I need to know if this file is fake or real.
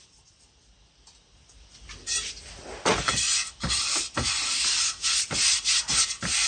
real